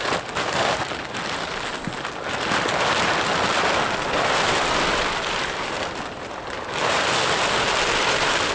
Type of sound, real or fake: real